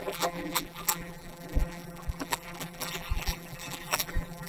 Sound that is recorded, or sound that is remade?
remade